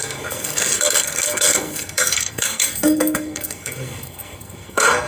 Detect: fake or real fake